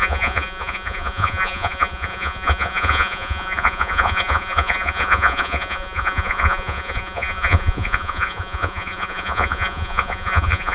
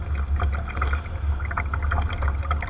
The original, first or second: second